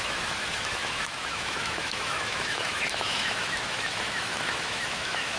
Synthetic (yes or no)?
yes